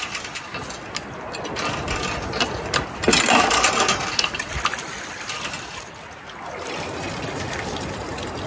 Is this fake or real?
real